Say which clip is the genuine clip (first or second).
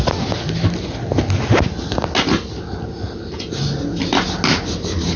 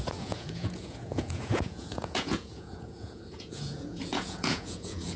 first